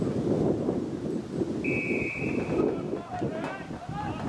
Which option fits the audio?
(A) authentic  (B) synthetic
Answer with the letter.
A